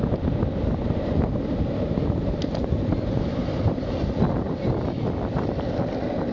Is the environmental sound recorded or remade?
recorded